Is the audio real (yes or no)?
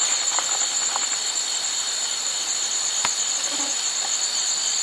yes